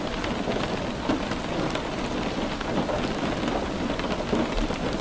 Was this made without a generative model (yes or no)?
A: yes